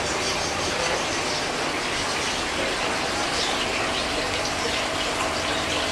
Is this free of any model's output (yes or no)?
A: yes